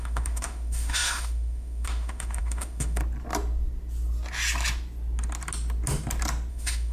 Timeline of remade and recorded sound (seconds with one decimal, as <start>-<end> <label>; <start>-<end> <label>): 0.0-3.0 remade; 3.0-6.5 recorded; 6.5-6.9 remade